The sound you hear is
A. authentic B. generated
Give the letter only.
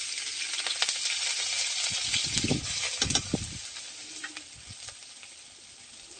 A